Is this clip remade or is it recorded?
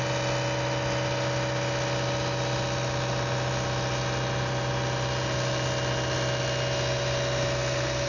recorded